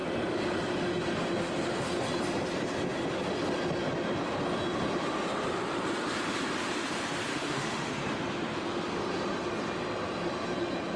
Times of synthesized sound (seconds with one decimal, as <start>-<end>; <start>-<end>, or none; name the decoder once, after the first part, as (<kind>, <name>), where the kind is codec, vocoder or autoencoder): 7.3-7.9 (autoencoder, DAC-VAE)